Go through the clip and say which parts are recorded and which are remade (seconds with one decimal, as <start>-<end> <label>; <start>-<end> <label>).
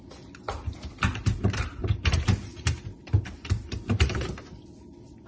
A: 0.0-1.1 recorded; 1.1-4.3 remade; 4.3-5.3 recorded